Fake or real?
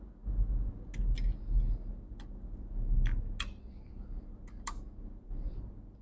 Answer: real